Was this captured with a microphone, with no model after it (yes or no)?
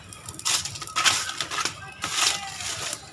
yes